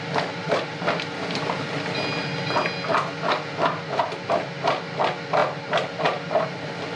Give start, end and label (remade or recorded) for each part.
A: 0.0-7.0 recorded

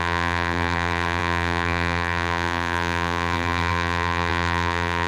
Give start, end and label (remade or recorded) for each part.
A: 0.0-5.1 remade

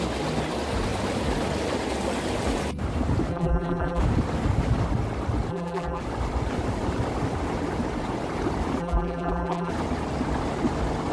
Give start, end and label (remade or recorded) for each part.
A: 0.0-3.3 recorded; 3.3-4.0 remade; 4.0-5.5 recorded; 5.5-6.0 remade; 6.0-8.8 recorded; 8.8-9.7 remade; 9.7-11.1 recorded

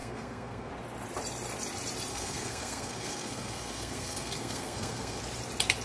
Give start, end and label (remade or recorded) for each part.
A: 0.0-0.7 remade; 0.7-2.1 recorded; 2.1-5.2 remade; 5.2-5.8 recorded

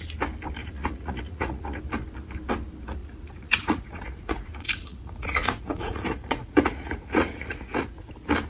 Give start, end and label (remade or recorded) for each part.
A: 0.0-0.6 recorded; 0.6-1.8 remade; 1.8-3.0 recorded; 3.0-8.1 remade; 8.1-8.5 recorded

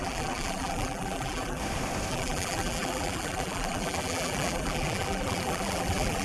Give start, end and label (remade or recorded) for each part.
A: 0.0-1.6 remade; 1.6-2.1 recorded; 2.1-6.2 remade